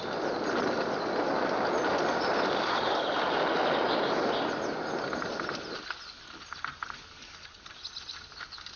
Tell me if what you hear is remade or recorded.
recorded